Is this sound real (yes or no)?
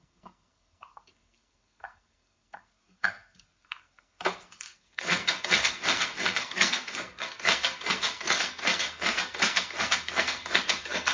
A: no